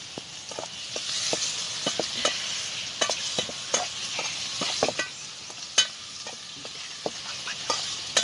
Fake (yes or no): no